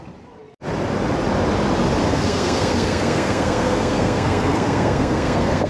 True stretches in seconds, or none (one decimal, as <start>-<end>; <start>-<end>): 0.0-2.0